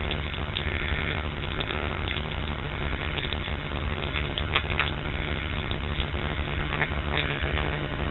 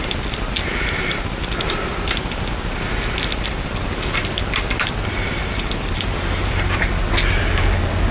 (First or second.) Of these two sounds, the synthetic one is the first